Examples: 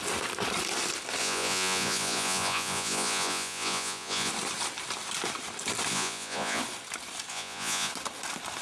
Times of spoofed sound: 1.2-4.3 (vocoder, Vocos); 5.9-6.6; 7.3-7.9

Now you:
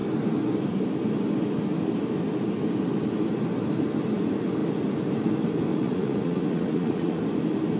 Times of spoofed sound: 5.7-7.2 (vocoder, Vocos)

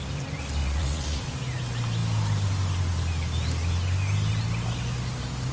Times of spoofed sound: 0.6-1.3 (vocoder, Vocos)

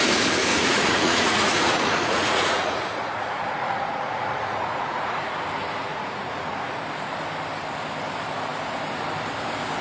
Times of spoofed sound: 0.5-5.3 (vocoder, Vocos); 5.9-6.8

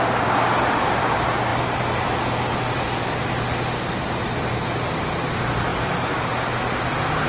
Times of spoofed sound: none

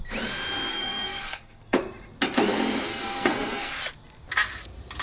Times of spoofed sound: 0.7-1.8 (codec, SNAC); 2.9-3.7